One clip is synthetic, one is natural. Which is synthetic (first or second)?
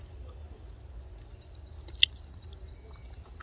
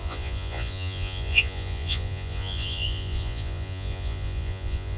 second